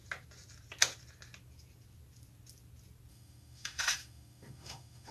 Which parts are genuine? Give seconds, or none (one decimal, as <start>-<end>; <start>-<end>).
0.0-3.1